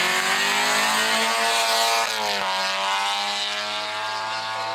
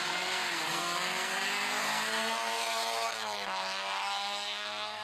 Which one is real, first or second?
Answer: first